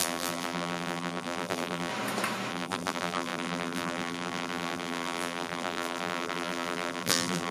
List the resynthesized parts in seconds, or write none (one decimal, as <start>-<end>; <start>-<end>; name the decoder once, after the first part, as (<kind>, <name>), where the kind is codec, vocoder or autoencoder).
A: 0.0-1.9 (vocoder, BigVGAN v2); 2.5-7.5